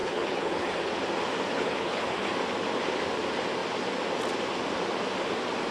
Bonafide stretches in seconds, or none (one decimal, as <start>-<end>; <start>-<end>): 0.8-1.5; 2.3-5.7